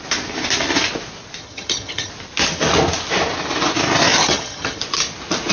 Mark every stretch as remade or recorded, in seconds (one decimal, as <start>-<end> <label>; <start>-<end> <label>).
0.0-1.4 recorded; 1.4-2.1 remade; 2.1-4.2 recorded; 4.2-4.8 remade; 4.8-5.5 recorded